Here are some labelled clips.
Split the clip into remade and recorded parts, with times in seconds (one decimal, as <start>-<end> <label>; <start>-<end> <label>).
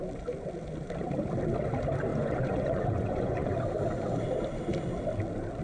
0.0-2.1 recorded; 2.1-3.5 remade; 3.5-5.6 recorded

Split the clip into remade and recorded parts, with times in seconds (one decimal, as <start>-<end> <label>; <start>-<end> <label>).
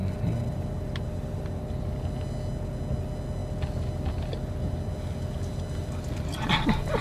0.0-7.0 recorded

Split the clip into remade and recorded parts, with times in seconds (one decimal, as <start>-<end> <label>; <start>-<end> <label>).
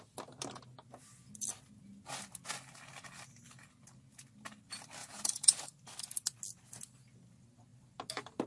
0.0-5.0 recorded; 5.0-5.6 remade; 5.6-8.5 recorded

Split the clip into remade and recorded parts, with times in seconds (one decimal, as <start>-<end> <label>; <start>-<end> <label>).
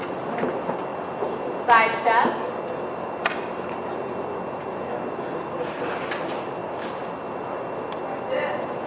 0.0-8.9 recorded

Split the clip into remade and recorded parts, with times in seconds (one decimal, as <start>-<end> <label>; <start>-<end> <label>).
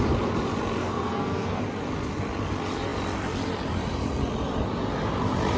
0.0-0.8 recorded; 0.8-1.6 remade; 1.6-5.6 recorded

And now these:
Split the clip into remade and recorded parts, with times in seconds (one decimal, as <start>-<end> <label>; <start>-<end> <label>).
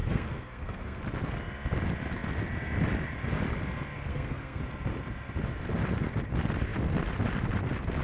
0.0-1.0 remade; 1.0-4.1 recorded; 4.1-4.6 remade; 4.6-8.0 recorded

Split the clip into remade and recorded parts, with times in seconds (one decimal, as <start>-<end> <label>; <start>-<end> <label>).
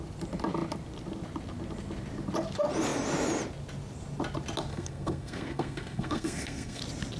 0.0-4.7 recorded; 4.7-6.8 remade; 6.8-7.2 recorded